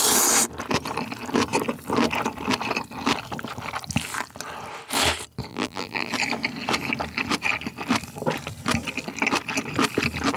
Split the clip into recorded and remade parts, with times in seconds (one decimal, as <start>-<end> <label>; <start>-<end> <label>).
0.0-5.5 recorded; 5.5-6.1 remade; 6.1-10.4 recorded